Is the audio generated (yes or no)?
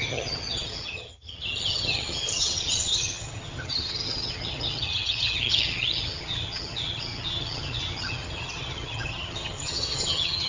yes